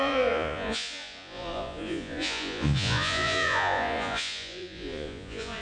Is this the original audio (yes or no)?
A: no